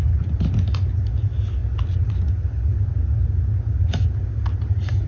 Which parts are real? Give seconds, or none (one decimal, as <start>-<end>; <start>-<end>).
0.0-5.1